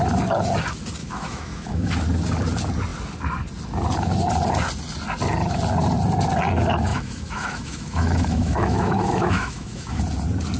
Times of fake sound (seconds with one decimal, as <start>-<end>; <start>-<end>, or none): 1.0-1.9; 6.9-10.0